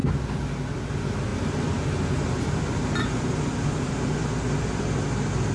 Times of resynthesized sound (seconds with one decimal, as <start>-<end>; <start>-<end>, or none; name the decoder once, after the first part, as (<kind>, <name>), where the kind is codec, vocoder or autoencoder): none